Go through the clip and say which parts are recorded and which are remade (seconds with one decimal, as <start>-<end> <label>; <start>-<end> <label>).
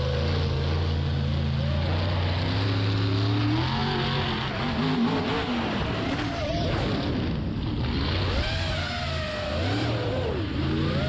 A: 0.0-11.1 recorded